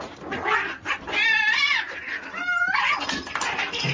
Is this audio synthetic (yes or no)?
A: no